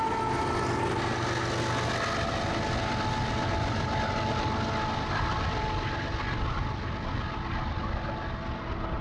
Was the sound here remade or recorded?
recorded